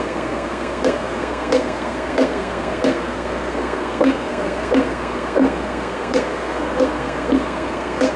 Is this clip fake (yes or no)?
yes